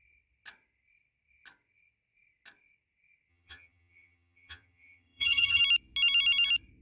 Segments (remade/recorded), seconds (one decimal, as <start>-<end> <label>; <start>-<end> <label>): 0.0-3.3 recorded; 3.3-5.6 remade; 5.6-6.8 recorded